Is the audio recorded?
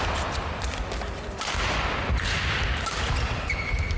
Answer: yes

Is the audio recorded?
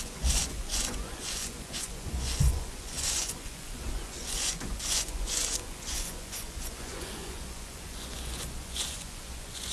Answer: no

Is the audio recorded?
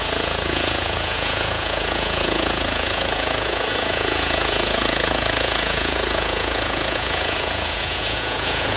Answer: no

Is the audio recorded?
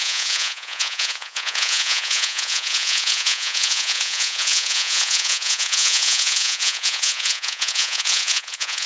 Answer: no